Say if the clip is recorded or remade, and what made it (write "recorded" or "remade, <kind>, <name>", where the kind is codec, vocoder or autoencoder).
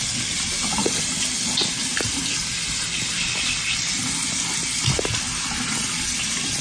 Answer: recorded